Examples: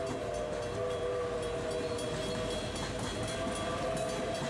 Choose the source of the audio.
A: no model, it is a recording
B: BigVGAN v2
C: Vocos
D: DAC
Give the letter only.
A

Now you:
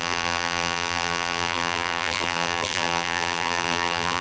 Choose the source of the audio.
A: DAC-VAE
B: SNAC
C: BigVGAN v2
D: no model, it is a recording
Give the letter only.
C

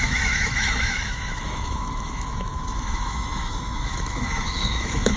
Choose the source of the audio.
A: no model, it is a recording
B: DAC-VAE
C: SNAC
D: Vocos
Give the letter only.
B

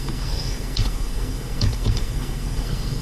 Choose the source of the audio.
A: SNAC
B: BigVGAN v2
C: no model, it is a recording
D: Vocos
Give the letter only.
A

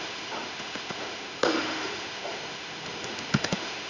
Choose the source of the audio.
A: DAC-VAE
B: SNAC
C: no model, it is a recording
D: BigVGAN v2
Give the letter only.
A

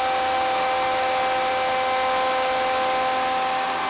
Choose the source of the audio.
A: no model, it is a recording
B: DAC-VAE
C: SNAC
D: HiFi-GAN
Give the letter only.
A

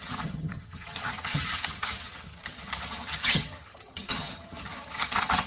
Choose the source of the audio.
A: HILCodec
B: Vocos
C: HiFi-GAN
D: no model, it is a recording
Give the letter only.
C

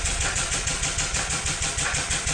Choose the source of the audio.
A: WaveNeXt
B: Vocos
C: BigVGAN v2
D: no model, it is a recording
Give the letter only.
B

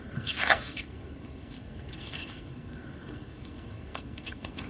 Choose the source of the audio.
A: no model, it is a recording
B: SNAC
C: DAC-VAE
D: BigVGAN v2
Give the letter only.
B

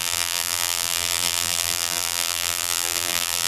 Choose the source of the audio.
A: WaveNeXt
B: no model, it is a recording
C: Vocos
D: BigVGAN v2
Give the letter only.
D